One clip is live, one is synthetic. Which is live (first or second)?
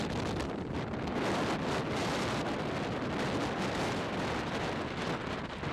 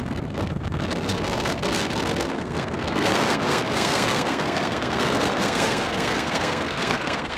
first